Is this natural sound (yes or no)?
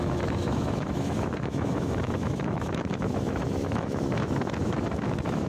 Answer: no